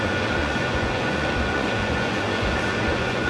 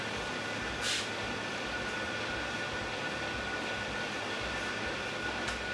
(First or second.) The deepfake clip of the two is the first